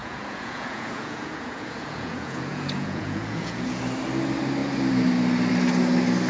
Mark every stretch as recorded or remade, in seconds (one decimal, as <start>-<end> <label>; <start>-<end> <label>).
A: 0.0-3.8 remade; 3.8-6.3 recorded